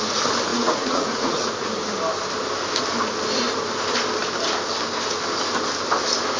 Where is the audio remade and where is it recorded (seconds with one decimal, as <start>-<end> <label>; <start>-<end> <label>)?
0.0-0.5 recorded; 0.5-1.7 remade; 1.7-6.4 recorded